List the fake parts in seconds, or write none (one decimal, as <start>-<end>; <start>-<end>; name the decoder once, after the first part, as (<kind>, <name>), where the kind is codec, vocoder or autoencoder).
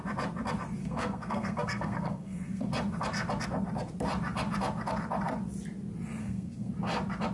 0.8-2.7 (codec, SNAC); 6.2-6.7